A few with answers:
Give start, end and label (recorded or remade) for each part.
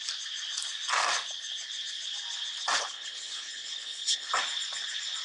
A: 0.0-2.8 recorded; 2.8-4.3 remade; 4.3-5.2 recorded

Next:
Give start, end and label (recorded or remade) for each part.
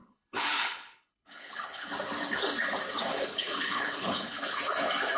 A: 0.0-1.9 remade; 1.9-3.1 recorded; 3.1-4.5 remade; 4.5-5.2 recorded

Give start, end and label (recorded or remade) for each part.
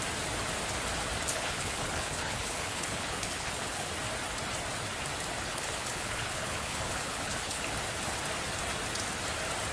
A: 0.0-1.3 recorded; 1.3-3.9 remade; 3.9-5.5 recorded; 5.5-7.6 remade; 7.6-9.7 recorded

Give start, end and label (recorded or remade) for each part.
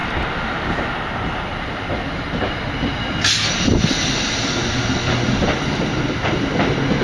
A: 0.0-7.0 recorded